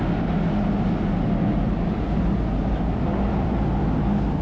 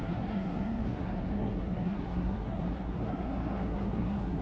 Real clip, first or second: first